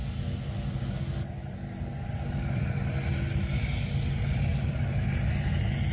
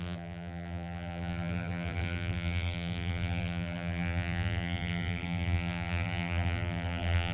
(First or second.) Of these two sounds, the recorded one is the first